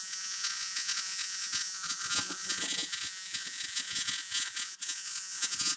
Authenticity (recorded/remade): remade